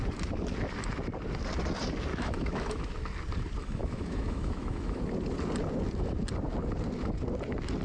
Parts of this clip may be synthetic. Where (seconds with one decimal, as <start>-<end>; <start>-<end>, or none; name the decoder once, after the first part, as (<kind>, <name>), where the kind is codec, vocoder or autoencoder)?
2.1-2.9 (autoencoder, DAC-VAE); 3.6-5.0